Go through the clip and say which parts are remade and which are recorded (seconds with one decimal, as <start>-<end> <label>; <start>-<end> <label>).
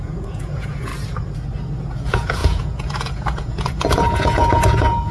0.0-0.9 remade; 0.9-1.9 recorded; 1.9-5.1 remade